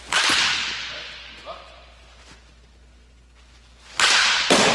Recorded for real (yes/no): yes